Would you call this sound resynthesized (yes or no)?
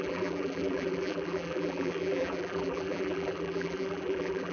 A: yes